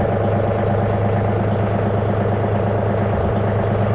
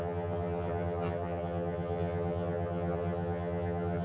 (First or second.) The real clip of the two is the first